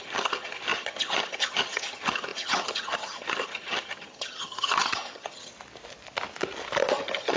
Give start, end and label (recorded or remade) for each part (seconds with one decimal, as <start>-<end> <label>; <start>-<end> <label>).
0.0-5.5 remade; 5.5-6.9 recorded; 6.9-7.4 remade